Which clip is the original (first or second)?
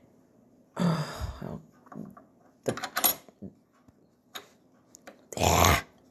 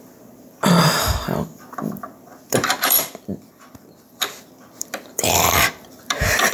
first